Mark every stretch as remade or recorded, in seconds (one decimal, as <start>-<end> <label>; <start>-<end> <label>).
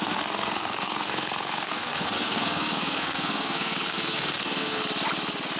0.0-4.8 remade; 4.8-5.6 recorded